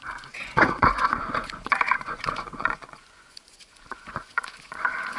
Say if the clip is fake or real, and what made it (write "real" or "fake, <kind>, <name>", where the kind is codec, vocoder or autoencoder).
fake, vocoder, Vocos